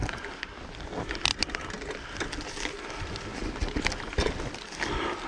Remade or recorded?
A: recorded